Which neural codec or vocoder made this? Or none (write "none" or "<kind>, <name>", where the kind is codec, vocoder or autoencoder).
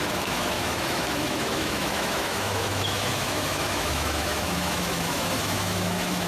autoencoder, DAC-VAE